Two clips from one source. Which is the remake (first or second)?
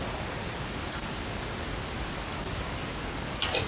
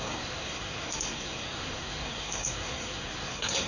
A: second